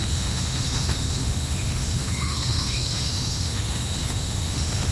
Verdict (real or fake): fake